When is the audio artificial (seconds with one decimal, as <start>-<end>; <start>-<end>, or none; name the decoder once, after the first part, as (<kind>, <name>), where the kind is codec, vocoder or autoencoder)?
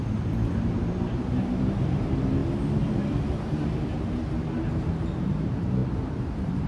0.0-6.7 (vocoder, BigVGAN v2)